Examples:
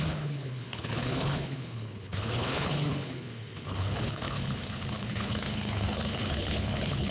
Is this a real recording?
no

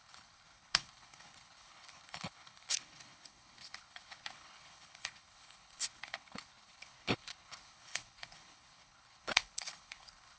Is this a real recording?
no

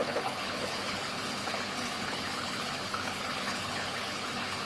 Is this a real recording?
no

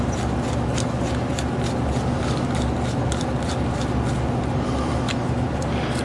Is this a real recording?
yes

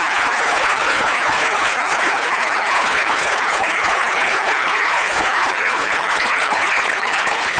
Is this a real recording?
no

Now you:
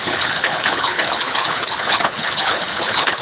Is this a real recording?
no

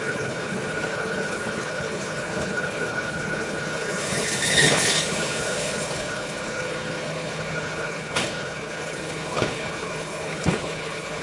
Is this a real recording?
no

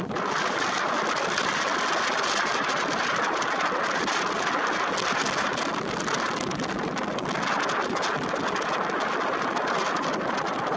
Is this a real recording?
yes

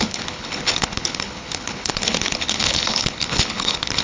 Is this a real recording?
no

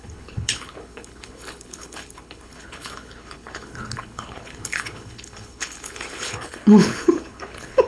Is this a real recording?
no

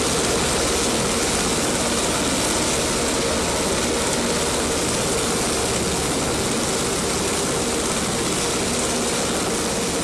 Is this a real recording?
yes